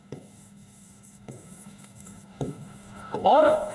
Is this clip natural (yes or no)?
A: no